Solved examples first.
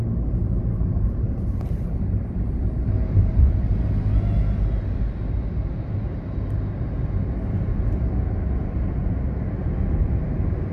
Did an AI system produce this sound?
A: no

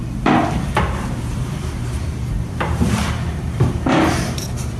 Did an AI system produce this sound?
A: yes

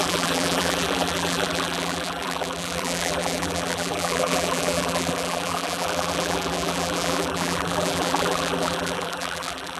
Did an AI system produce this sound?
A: yes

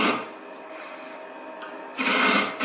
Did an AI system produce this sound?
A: no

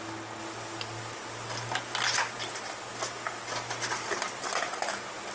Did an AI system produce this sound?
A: no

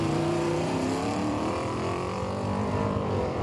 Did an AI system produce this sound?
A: yes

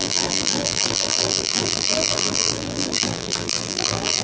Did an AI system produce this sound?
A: yes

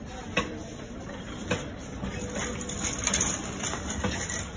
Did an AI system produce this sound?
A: no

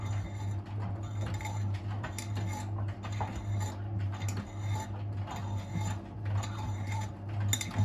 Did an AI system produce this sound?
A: no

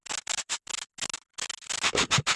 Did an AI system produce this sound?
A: no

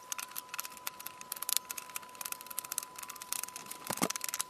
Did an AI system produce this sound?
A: yes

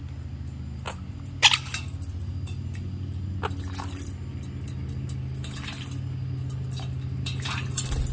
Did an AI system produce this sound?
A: no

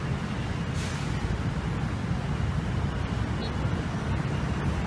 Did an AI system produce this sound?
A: no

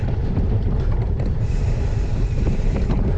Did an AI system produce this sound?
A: yes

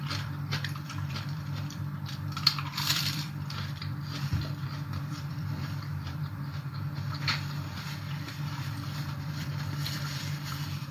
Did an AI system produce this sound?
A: yes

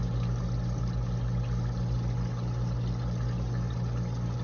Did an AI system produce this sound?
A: no